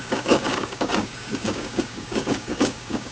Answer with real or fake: fake